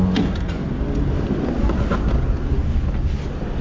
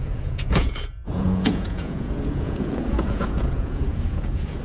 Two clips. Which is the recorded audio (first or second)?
first